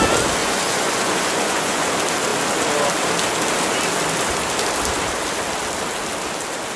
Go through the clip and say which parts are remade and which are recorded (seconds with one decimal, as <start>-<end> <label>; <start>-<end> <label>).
0.0-0.4 recorded; 0.4-1.9 remade; 1.9-6.8 recorded